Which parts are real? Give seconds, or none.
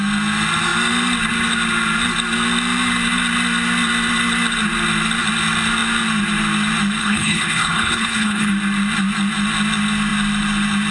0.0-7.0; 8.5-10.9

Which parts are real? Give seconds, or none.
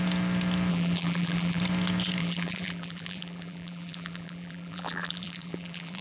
0.0-0.7; 1.6-2.2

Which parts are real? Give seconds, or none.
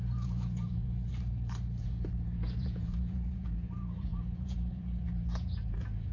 1.1-1.8